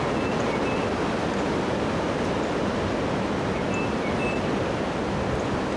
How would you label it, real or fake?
real